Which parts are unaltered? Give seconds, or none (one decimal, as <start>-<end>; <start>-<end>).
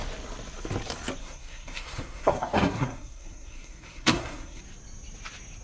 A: 0.0-1.2; 4.6-5.6